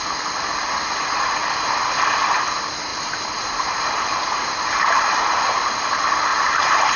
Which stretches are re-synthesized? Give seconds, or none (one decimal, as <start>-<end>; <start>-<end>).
2.9-5.5; 6.3-7.0